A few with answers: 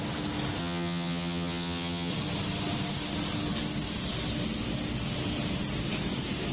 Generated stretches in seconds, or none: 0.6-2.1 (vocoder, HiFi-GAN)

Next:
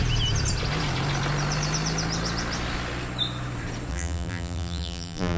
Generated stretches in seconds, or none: 3.9-5.4 (vocoder, BigVGAN v2)

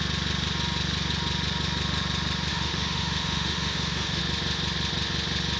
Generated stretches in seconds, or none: 2.5-4.2 (autoencoder, DAC-VAE)

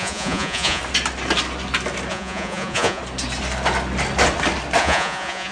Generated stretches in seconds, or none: 0.0-0.8 (vocoder, Vocos); 2.1-3.0; 4.8-5.5